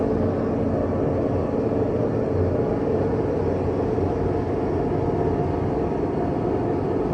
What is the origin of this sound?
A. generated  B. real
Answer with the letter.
B